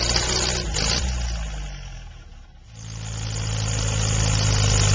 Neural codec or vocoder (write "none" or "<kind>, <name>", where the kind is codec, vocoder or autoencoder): none